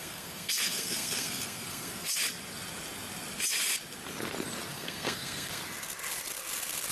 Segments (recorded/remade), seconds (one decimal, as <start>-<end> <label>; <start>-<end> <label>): 0.0-2.2 remade; 2.2-4.7 recorded; 4.7-5.6 remade; 5.6-6.9 recorded